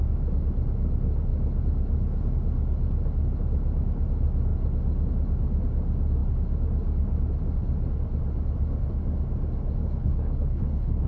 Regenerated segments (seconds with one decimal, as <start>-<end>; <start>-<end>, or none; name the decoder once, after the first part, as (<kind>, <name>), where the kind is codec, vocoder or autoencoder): 9.8-11.1 (codec, HILCodec)